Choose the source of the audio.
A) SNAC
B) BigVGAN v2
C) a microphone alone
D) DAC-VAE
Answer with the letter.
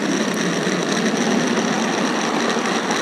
C